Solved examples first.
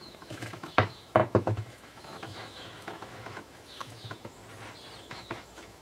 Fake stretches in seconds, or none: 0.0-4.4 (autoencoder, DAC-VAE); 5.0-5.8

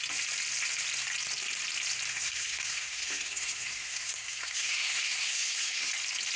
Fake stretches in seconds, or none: 2.1-5.9 (codec, SNAC)